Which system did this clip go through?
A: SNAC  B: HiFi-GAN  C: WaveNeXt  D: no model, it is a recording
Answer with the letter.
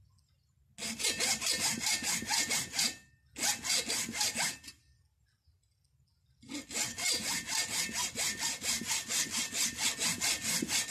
D